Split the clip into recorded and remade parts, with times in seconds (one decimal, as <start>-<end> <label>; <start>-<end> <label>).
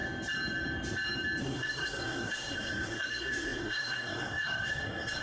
0.0-1.4 recorded; 1.4-5.2 remade